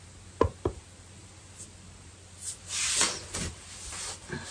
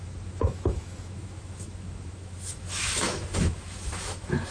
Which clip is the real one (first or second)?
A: first